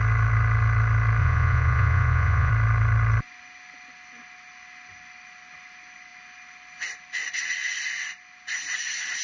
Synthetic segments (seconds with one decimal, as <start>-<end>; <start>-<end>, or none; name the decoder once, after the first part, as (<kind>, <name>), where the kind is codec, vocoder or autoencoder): 1.2-2.5 (vocoder, Vocos)